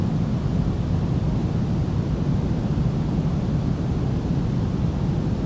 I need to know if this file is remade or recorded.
recorded